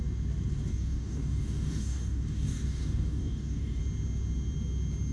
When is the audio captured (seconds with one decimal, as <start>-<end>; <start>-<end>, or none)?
0.0-0.7; 3.8-5.1